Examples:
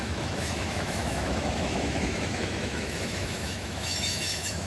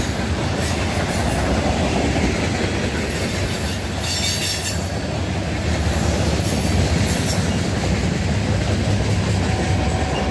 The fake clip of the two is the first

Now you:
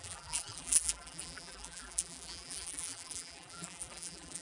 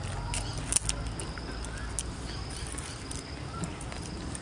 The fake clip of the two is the first